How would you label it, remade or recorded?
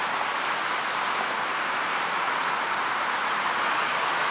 recorded